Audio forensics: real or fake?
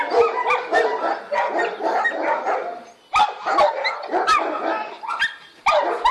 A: real